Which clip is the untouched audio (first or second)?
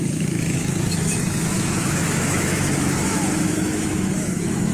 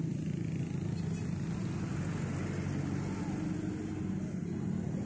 second